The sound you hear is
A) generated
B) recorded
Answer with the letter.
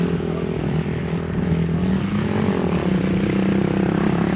B